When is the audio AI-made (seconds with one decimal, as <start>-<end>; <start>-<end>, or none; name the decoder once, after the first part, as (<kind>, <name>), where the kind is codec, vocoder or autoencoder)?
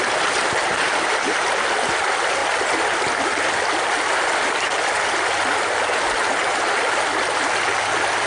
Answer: none